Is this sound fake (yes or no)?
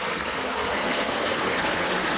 yes